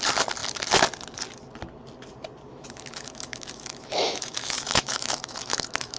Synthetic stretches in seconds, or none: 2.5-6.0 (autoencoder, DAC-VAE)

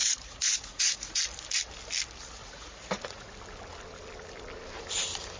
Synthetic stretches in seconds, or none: 0.0-1.2 (vocoder, Vocos); 2.4-3.3

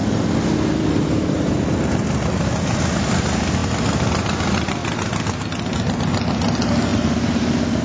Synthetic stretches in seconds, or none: none

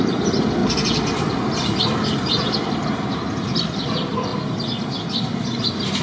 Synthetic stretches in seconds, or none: none

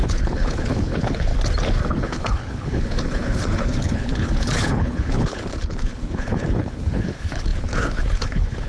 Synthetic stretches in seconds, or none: 0.0-1.3 (codec, HILCodec); 1.9-8.7